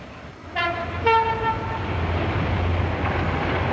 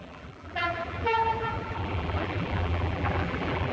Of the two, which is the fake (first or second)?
second